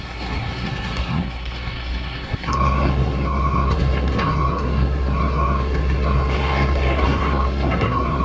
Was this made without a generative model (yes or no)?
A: no